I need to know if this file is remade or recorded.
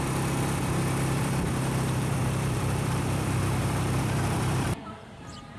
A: remade